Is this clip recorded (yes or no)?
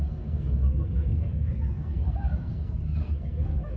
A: no